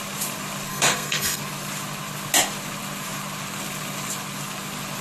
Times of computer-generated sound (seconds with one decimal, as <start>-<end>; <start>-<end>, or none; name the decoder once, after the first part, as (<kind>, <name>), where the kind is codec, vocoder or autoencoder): 0.7-1.4 (codec, SNAC)